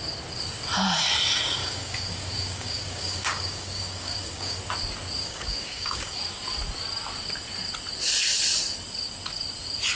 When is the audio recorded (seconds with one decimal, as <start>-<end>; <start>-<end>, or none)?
0.0-1.6; 4.6-5.2; 6.2-10.0